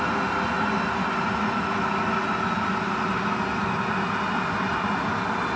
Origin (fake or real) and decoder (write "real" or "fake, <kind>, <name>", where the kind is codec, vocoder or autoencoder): real